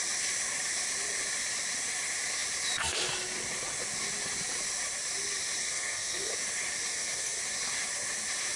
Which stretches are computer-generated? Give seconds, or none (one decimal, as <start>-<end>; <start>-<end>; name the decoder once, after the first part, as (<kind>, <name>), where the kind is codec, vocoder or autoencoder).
5.6-6.3 (codec, SNAC); 6.9-7.4

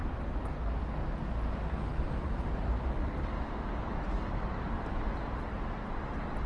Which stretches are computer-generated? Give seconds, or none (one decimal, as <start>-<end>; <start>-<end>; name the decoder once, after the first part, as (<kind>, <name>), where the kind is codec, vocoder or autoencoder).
none

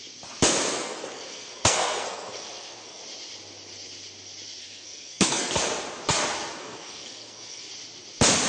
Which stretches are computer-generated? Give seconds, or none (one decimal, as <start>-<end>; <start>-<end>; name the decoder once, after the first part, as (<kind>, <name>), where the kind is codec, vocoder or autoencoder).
0.7-3.0 (codec, SNAC); 4.6-5.5; 6.6-7.7

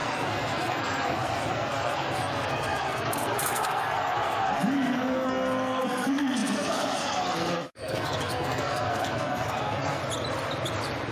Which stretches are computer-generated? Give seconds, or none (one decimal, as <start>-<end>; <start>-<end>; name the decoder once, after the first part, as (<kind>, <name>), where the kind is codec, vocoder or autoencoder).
0.0-10.0 (codec, SNAC)